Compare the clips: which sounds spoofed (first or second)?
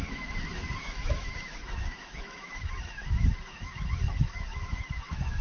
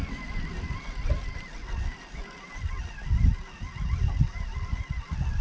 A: first